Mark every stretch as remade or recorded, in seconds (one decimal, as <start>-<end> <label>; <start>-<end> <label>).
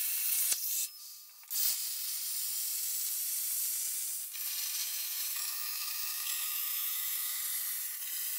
0.0-4.8 recorded; 4.8-7.4 remade; 7.4-8.4 recorded